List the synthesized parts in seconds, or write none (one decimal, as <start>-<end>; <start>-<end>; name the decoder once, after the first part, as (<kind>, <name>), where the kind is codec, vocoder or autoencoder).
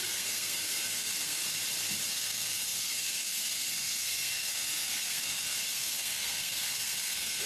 0.0-1.4 (codec, SNAC); 2.1-7.5